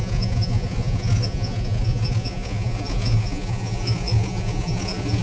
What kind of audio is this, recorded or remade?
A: remade